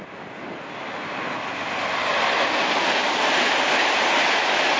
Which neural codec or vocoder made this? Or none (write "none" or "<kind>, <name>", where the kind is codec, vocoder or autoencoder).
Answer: none